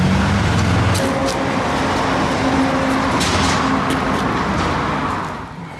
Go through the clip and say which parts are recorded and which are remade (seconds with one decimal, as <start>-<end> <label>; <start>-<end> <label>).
0.0-5.8 recorded